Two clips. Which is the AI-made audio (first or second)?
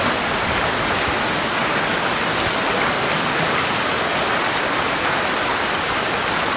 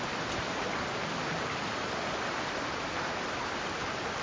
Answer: second